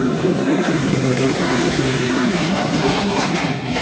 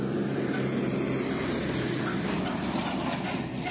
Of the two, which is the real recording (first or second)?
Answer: second